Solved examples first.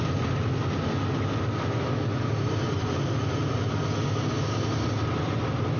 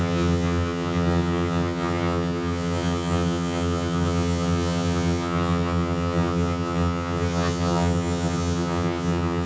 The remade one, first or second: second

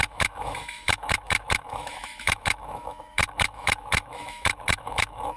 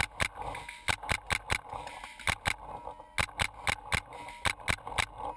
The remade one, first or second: first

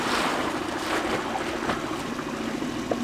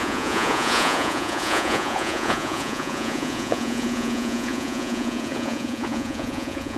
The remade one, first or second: second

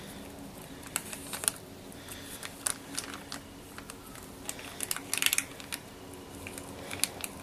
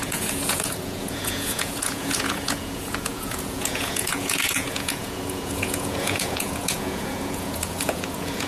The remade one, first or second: second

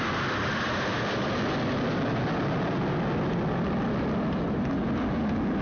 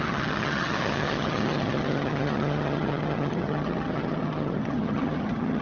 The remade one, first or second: second